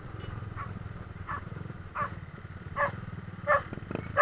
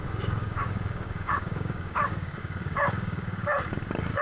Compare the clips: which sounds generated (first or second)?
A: second